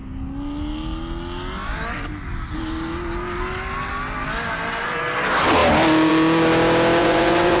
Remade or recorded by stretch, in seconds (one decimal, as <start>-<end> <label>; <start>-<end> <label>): 0.0-7.0 recorded; 7.0-7.6 remade